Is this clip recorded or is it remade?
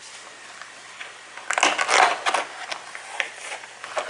recorded